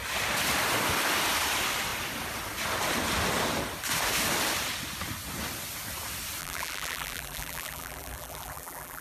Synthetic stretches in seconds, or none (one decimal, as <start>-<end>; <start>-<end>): 6.4-9.0